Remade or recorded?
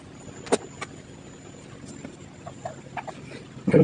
recorded